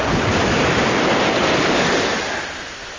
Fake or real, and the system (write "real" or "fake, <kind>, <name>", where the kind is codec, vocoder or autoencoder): real